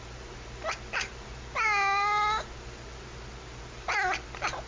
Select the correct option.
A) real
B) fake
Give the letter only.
A